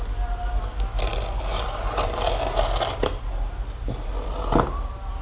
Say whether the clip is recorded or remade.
recorded